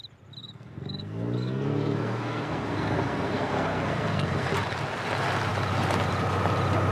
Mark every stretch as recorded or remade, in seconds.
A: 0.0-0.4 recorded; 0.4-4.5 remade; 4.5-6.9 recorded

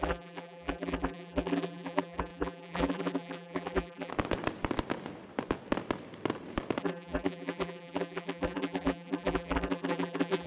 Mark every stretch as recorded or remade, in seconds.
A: 0.0-4.1 remade; 4.1-6.8 recorded; 6.8-10.5 remade

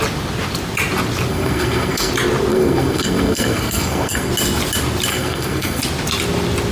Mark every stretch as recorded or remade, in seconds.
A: 0.0-1.3 recorded; 1.3-2.1 remade; 2.1-2.5 recorded; 2.5-4.3 remade; 4.3-5.1 recorded; 5.1-5.8 remade; 5.8-6.7 recorded